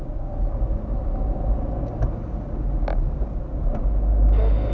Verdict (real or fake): real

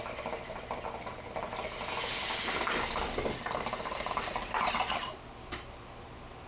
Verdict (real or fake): real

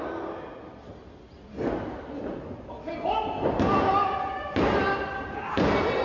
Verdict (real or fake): real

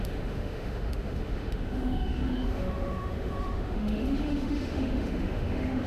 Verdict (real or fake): fake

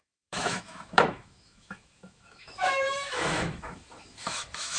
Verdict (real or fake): fake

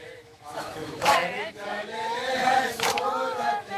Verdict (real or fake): fake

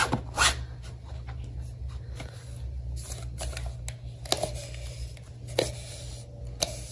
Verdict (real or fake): real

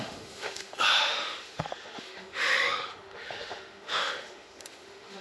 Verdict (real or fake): fake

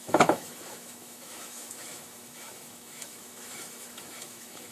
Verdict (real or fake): fake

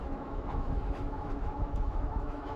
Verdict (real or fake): fake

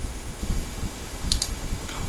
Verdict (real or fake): fake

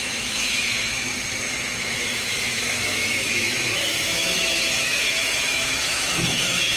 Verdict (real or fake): fake